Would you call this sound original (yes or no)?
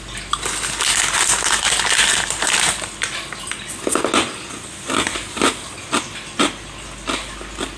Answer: yes